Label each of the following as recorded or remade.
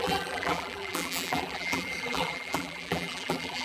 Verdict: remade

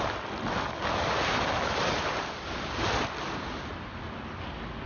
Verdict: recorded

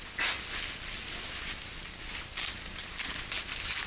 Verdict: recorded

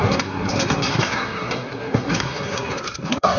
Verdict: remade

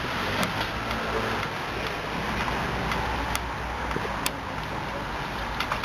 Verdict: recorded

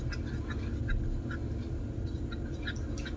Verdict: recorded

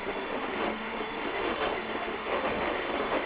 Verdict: remade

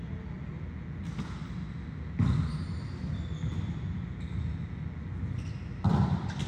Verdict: recorded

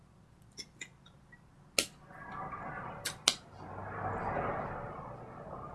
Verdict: recorded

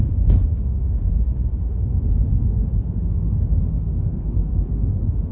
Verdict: remade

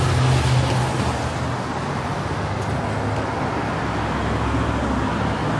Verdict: recorded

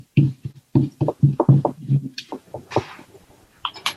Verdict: remade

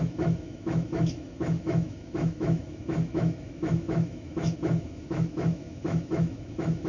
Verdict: remade